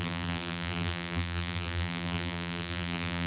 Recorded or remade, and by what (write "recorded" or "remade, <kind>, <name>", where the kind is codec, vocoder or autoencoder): remade, vocoder, BigVGAN v2